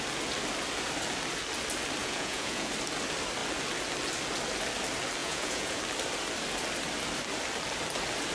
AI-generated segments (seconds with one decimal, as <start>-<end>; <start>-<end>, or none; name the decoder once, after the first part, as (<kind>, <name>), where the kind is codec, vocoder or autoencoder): 2.0-2.7 (vocoder, Vocos); 5.2-5.8